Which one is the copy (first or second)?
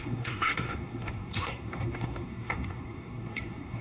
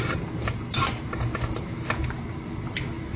first